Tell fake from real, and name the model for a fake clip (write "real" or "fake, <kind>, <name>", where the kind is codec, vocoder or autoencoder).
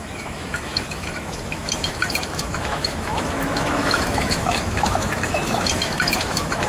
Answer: fake, autoencoder, DAC-VAE